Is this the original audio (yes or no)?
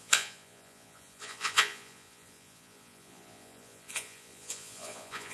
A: no